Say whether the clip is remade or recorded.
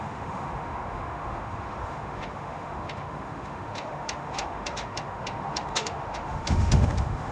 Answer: remade